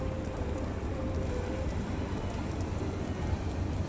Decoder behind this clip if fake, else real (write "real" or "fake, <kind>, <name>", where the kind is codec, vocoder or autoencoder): real